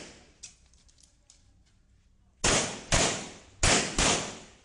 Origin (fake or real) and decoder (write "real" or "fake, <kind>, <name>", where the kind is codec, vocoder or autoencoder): real